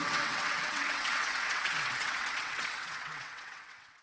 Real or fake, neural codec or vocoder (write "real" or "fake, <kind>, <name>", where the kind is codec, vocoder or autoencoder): fake, vocoder, WaveNeXt